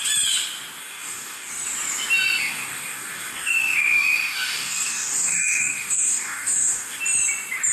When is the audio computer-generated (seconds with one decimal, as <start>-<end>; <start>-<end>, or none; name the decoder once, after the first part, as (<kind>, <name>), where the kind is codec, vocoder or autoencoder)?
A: 0.8-1.5 (codec, DAC); 2.4-7.0